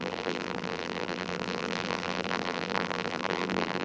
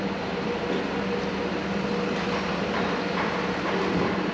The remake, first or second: first